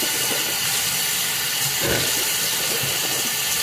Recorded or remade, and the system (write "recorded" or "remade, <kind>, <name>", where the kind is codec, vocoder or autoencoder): recorded